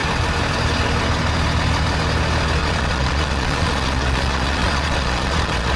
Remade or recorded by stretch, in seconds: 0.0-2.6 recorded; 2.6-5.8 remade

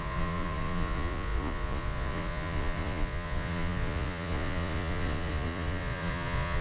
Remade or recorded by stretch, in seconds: 0.0-6.6 remade

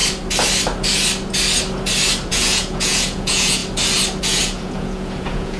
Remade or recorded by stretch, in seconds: 0.0-2.3 recorded; 2.3-3.6 remade; 3.6-4.2 recorded; 4.2-5.6 remade

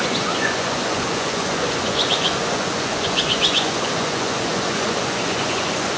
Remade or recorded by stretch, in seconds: 0.0-6.0 remade

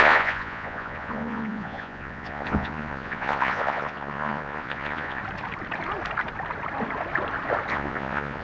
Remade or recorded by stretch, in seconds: 0.0-5.2 remade; 5.2-7.7 recorded; 7.7-8.4 remade

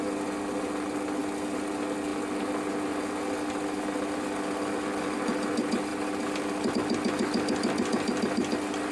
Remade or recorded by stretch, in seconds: 0.0-8.9 recorded

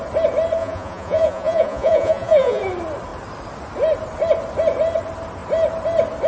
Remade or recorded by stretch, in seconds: 0.0-0.6 recorded; 0.6-2.6 remade; 2.6-6.3 recorded

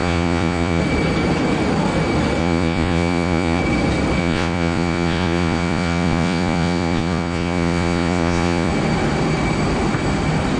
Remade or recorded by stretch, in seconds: 0.0-0.8 remade; 0.8-2.4 recorded; 2.4-3.6 remade; 3.6-4.2 recorded; 4.2-8.7 remade; 8.7-10.6 recorded